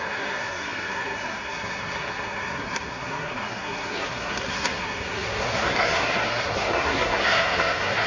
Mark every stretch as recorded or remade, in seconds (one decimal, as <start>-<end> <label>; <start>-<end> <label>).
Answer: 0.0-8.1 remade